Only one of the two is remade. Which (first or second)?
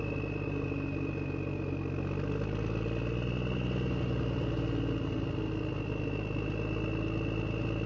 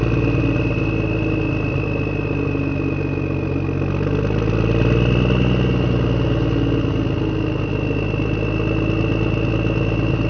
first